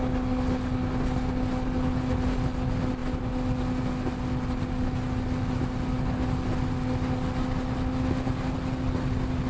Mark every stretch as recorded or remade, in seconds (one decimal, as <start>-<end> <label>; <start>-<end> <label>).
0.0-9.5 recorded

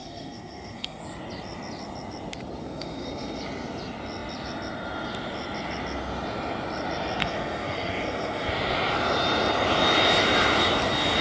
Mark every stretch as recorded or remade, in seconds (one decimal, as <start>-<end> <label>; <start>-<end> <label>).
0.0-1.0 remade; 1.0-2.6 recorded; 2.6-3.4 remade; 3.4-7.2 recorded; 7.2-8.5 remade; 8.5-11.2 recorded

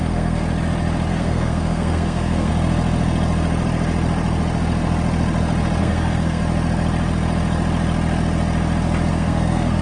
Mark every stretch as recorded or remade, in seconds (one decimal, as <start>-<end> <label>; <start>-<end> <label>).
0.0-0.4 remade; 0.4-1.1 recorded; 1.1-2.5 remade; 2.5-5.8 recorded; 5.8-6.4 remade; 6.4-9.1 recorded; 9.1-9.8 remade

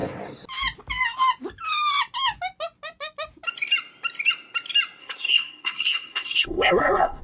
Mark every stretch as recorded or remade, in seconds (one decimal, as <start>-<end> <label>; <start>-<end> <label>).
0.0-5.0 recorded; 5.0-7.2 remade

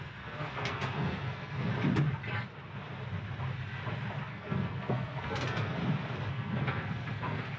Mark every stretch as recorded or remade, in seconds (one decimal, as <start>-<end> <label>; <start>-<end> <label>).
0.0-1.7 remade; 1.7-4.3 recorded; 4.3-5.8 remade; 5.8-6.3 recorded; 6.3-7.6 remade

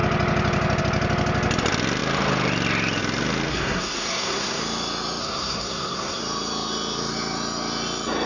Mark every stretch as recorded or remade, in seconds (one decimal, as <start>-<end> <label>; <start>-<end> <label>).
0.0-3.5 recorded; 3.5-4.6 remade; 4.6-5.2 recorded; 5.2-6.2 remade; 6.2-8.3 recorded

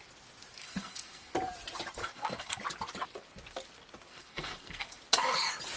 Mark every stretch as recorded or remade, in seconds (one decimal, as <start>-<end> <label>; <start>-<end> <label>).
0.0-0.6 recorded; 0.6-1.3 remade; 1.3-2.0 recorded; 2.0-2.6 remade; 2.6-4.1 recorded; 4.1-5.0 remade; 5.0-5.8 recorded

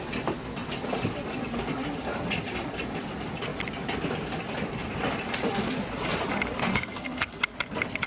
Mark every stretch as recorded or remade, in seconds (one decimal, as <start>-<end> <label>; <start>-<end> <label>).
0.0-6.7 recorded; 6.7-7.4 remade; 7.4-8.1 recorded